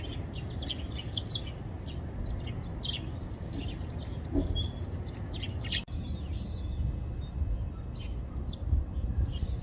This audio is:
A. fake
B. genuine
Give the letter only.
B